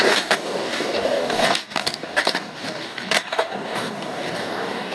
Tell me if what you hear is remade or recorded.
remade